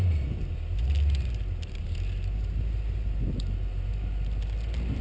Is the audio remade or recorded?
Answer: recorded